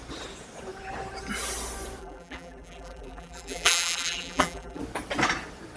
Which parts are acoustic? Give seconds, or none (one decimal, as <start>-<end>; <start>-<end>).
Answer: 0.0-2.0; 4.8-5.8